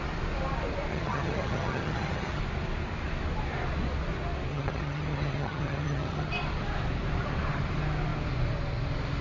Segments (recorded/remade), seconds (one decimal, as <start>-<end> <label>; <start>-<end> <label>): 0.0-0.9 recorded; 0.9-2.4 remade; 2.4-4.5 recorded; 4.5-6.3 remade; 6.3-9.2 recorded